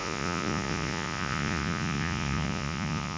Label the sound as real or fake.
fake